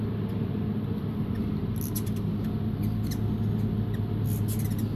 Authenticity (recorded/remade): recorded